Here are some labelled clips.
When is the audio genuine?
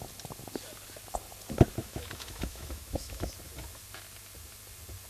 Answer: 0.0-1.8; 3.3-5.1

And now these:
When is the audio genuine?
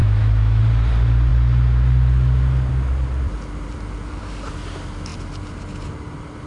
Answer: 0.6-6.5